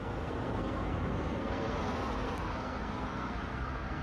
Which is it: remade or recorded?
remade